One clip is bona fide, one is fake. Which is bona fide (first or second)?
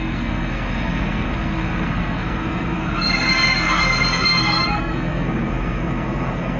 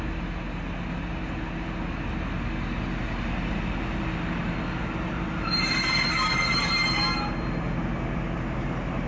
second